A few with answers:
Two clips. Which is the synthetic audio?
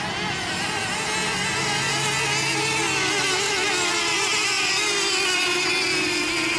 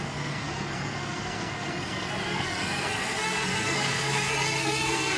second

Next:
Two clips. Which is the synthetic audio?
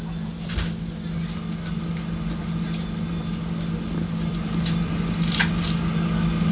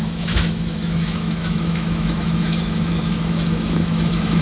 second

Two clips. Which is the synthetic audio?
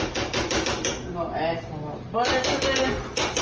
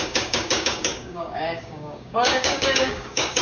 second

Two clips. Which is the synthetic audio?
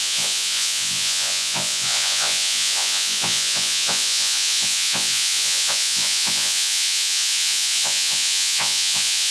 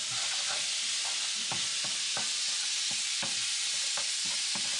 first